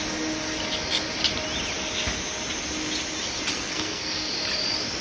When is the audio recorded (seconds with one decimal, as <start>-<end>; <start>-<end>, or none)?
0.0-3.5; 4.3-5.0